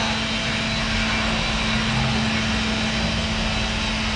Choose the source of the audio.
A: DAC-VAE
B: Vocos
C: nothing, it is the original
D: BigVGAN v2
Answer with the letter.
C